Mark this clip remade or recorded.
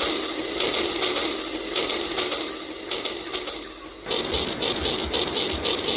recorded